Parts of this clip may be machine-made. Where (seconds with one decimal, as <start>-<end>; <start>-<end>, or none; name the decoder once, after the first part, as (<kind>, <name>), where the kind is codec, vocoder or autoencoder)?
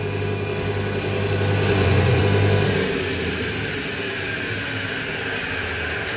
1.7-2.2 (vocoder, Vocos)